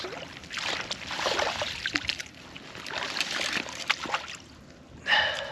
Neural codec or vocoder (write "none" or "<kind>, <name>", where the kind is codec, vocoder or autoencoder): none